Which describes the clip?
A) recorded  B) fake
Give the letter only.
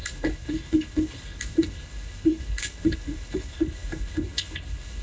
B